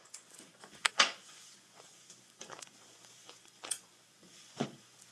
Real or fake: fake